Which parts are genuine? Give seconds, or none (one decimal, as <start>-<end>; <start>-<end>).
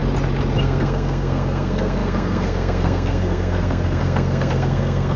0.0-0.6